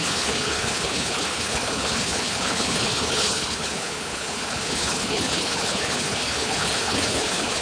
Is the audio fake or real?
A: fake